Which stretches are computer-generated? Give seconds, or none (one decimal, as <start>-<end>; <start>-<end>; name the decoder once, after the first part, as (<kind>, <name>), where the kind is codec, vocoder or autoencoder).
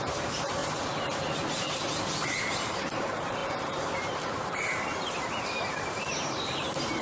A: 0.0-0.6 (vocoder, BigVGAN v2); 2.8-7.0